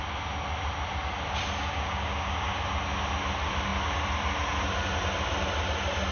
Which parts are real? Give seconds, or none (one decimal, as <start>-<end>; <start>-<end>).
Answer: 0.0-1.6; 2.6-6.1